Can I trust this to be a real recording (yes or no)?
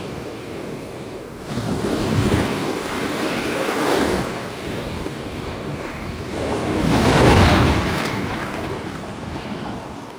no